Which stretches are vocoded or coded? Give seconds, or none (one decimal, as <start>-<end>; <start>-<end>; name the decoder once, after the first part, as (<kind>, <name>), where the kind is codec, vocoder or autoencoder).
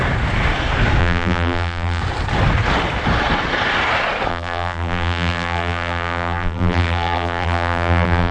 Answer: 1.0-2.0 (vocoder, BigVGAN v2); 4.3-8.3